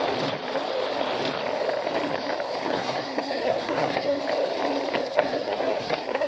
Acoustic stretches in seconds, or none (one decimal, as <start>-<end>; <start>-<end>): 0.0-2.6; 4.2-5.0